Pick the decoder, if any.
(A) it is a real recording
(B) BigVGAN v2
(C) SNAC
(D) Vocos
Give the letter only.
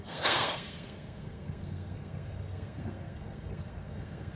C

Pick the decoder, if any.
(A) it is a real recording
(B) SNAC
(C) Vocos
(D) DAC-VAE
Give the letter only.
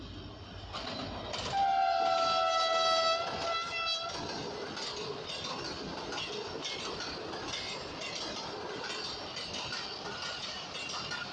A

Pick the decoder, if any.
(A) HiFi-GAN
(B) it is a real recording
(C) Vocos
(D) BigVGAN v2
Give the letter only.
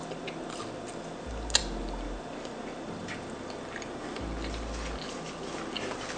B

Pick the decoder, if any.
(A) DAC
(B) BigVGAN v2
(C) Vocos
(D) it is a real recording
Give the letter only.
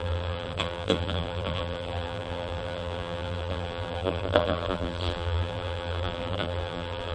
B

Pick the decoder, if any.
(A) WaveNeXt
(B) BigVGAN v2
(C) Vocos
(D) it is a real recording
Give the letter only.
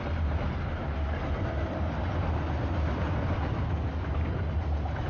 D